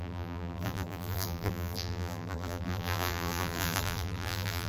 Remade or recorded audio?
remade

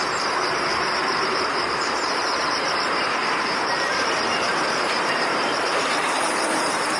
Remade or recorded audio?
remade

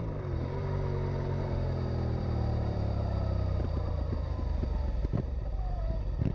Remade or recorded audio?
remade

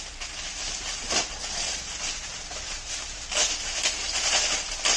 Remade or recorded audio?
recorded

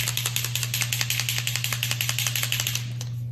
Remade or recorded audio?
recorded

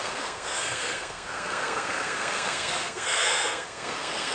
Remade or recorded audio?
remade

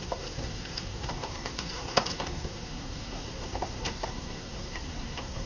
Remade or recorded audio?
remade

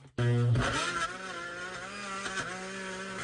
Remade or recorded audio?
recorded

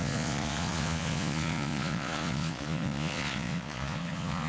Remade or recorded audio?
remade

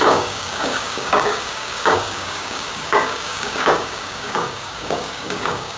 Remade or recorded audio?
remade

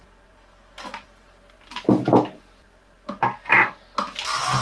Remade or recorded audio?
recorded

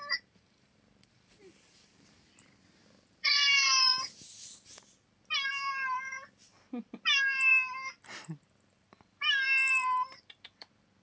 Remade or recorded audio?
remade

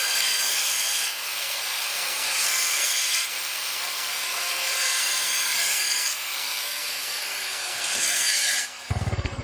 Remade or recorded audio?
remade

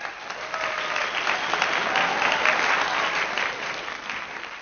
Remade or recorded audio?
remade